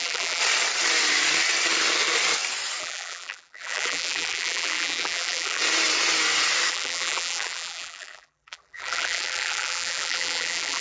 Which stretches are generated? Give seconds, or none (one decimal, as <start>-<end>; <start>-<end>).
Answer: 0.0-0.4; 2.8-5.6; 6.7-10.8